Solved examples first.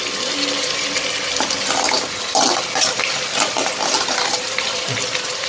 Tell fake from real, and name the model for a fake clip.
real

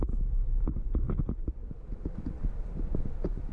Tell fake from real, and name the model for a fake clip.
real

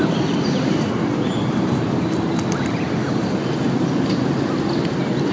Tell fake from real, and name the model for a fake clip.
real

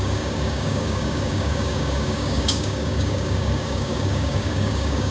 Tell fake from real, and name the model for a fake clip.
fake, codec, DAC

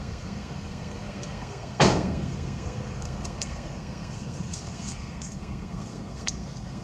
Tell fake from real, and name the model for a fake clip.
fake, codec, SNAC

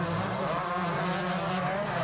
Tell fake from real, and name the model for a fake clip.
real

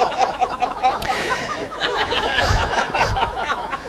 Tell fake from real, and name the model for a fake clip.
fake, autoencoder, DAC-VAE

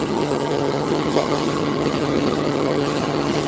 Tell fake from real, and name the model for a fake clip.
fake, vocoder, HiFi-GAN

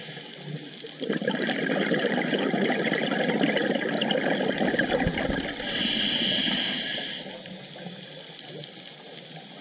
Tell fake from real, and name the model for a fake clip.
real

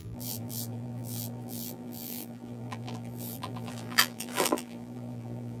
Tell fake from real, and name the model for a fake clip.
fake, vocoder, BigVGAN v2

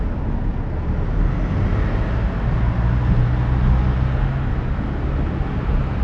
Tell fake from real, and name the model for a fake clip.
real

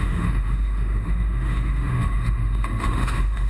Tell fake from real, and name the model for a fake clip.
fake, autoencoder, DAC-VAE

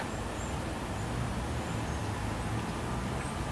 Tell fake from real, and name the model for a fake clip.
real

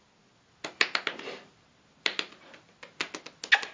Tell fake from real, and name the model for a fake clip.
real